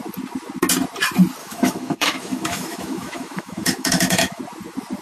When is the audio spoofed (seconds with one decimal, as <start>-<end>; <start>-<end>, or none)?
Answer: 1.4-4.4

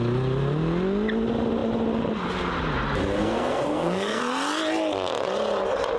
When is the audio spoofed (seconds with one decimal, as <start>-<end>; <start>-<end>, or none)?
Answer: 3.2-4.2

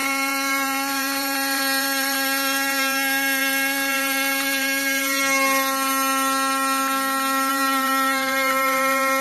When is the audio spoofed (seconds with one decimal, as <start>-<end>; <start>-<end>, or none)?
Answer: 0.0-5.2; 7.5-9.2

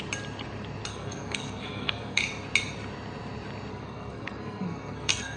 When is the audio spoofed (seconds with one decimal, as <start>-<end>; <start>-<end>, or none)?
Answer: 0.9-2.2; 3.7-5.4

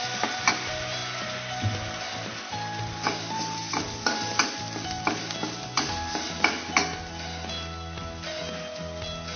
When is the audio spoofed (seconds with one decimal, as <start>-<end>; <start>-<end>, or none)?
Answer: none

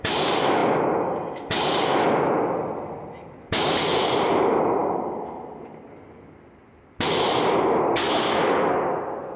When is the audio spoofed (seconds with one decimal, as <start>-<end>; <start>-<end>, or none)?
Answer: none